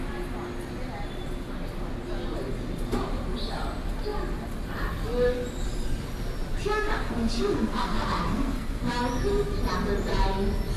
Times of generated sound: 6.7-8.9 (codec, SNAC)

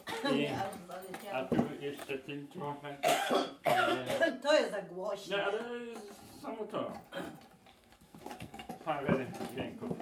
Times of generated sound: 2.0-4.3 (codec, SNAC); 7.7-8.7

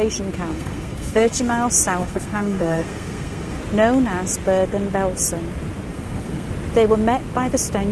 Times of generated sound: 0.5-1.4 (codec, SNAC); 2.0-3.6; 5.9-6.5

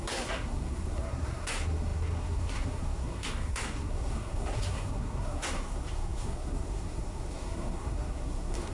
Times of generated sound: 0.0-8.7 (codec, SNAC)